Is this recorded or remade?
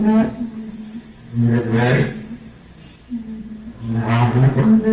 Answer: recorded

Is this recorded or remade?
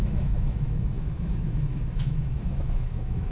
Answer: remade